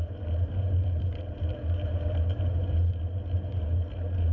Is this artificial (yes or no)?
yes